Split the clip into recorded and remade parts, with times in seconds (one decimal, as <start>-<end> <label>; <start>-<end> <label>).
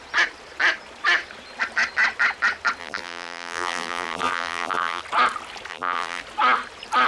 0.0-2.8 recorded; 2.8-5.0 remade; 5.0-5.7 recorded; 5.7-6.2 remade; 6.2-7.1 recorded